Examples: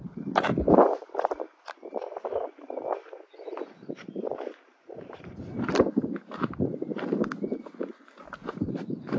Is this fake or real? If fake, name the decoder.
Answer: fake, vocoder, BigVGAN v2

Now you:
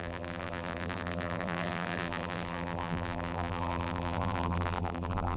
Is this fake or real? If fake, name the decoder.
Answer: fake, vocoder, BigVGAN v2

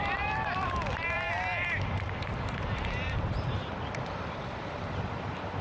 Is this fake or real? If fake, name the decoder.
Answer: fake, vocoder, BigVGAN v2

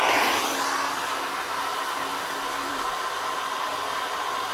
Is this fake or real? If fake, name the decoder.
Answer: fake, vocoder, BigVGAN v2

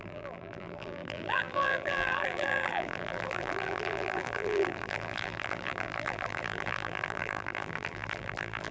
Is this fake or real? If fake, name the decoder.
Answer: fake, vocoder, BigVGAN v2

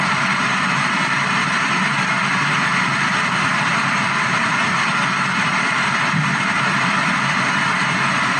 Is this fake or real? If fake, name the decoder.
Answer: fake, vocoder, BigVGAN v2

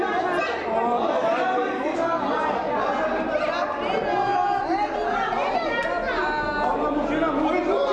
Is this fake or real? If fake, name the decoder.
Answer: real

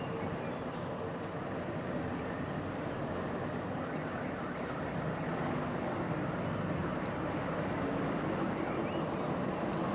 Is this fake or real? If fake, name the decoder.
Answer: real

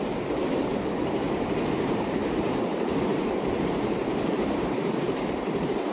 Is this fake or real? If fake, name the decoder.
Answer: fake, vocoder, BigVGAN v2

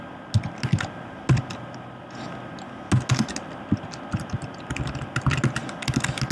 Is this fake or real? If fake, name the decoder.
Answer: real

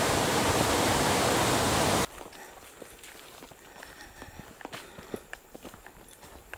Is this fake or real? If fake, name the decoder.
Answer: real